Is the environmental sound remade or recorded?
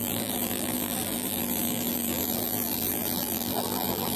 remade